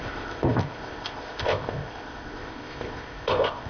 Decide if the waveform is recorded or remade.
remade